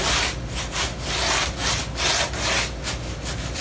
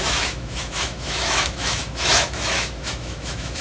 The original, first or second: first